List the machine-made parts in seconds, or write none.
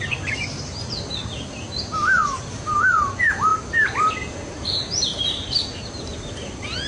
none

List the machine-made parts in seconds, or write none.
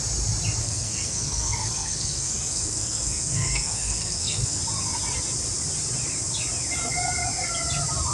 0.6-4.6 (codec, SNAC)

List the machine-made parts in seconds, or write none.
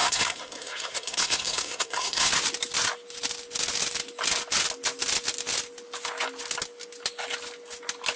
0.0-2.3 (codec, SNAC)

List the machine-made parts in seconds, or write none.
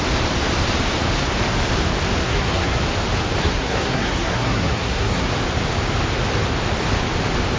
2.2-2.8 (codec, SNAC); 3.4-5.3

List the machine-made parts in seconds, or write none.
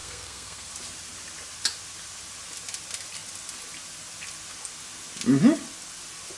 0.0-0.7 (codec, SNAC)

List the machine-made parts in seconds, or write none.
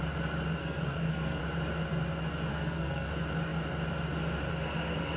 0.6-1.4 (codec, SNAC); 2.5-3.1